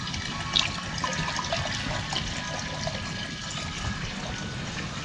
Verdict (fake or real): real